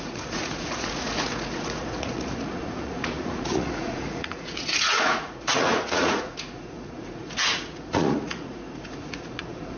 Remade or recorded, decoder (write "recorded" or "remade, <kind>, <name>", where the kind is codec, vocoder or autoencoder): remade, vocoder, Vocos